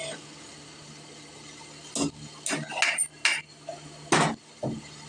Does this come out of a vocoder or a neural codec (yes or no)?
no